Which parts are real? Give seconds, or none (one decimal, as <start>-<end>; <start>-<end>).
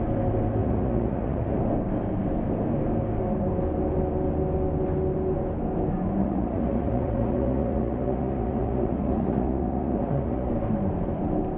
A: 0.0-0.6; 1.6-6.2; 10.5-11.6